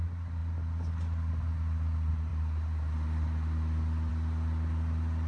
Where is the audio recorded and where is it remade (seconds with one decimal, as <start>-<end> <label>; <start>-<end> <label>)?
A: 0.0-5.3 recorded